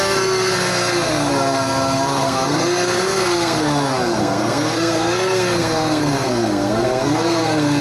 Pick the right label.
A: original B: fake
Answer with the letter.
B